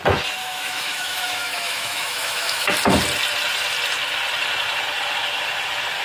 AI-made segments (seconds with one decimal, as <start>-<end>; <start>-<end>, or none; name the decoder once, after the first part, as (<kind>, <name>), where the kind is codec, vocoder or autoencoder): 0.4-2.7 (autoencoder, DAC-VAE)